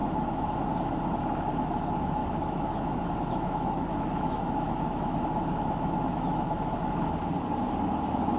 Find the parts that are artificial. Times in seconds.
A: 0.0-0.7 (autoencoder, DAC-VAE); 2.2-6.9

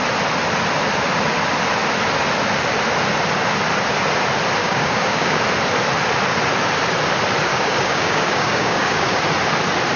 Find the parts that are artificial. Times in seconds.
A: 4.6-5.4 (codec, DAC); 7.5-9.2

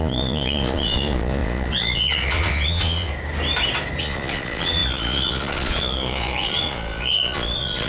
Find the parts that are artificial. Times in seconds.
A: 0.0-3.1 (vocoder, Vocos); 4.0-7.9